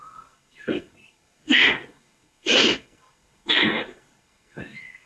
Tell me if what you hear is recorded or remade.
remade